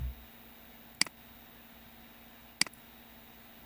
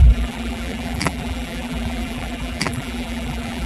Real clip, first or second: first